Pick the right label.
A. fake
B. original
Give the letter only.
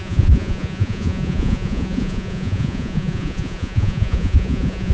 A